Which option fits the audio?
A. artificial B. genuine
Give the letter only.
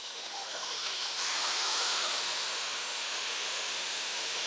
A